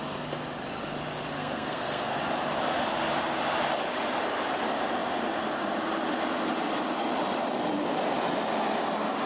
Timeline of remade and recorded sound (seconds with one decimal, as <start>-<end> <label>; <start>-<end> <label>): 0.0-1.3 recorded; 1.3-2.2 remade; 2.2-9.3 recorded